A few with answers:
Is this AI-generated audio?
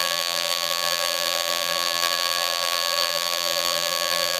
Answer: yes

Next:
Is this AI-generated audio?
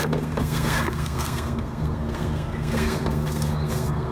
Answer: yes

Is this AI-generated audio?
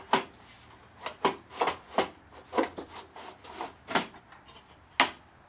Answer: no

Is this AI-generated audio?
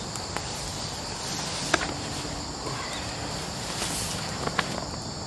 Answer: no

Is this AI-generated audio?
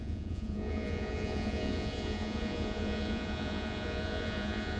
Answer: yes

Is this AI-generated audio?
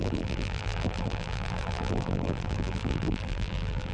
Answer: yes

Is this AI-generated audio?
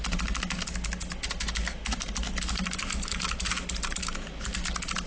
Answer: no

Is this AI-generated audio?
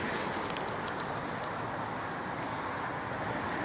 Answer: no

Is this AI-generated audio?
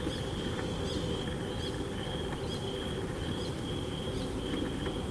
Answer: no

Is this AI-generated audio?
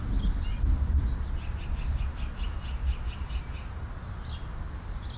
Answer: no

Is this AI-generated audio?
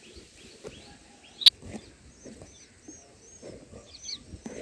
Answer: no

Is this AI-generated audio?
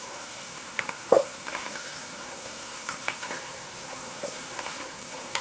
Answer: yes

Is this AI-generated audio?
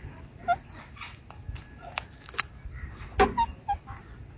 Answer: no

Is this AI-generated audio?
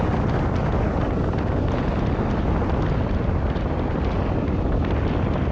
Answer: no